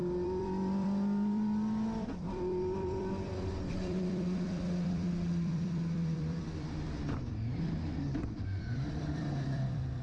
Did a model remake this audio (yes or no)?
yes